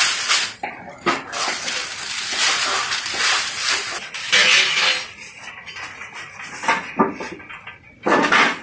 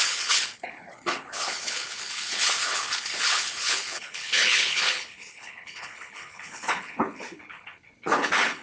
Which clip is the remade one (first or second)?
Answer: second